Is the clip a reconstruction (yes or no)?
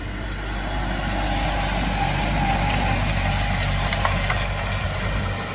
no